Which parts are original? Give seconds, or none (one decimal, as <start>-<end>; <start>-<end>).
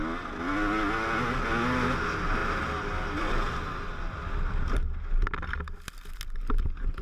0.0-7.0